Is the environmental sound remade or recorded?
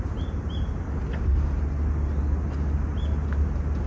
recorded